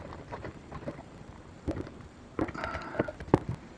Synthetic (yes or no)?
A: yes